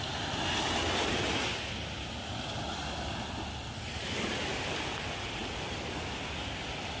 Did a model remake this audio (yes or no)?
no